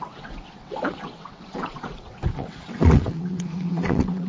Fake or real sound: fake